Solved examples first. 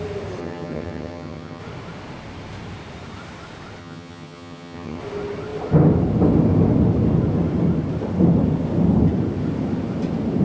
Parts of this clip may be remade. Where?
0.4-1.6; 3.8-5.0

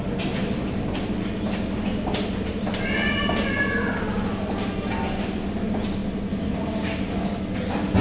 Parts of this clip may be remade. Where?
none

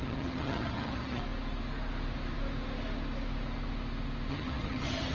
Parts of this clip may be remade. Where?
0.0-1.2; 4.3-5.1

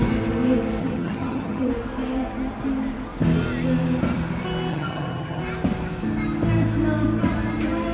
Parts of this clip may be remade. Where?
0.8-1.7; 4.7-5.4